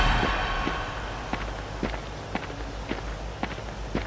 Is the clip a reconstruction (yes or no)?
no